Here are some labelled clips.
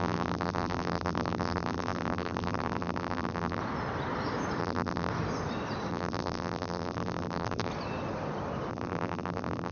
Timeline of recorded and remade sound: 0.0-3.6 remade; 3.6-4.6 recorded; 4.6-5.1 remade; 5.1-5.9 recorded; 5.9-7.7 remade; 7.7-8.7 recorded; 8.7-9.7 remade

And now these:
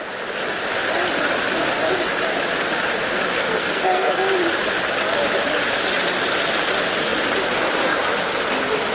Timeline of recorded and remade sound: 0.0-3.4 recorded; 3.4-4.4 remade; 4.4-8.9 recorded